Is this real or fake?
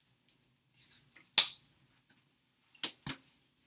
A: real